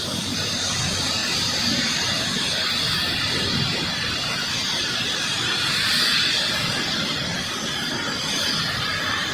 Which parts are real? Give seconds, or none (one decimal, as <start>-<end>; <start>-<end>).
0.0-7.3; 8.8-9.3